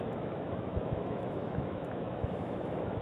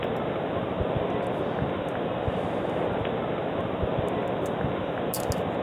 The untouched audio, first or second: second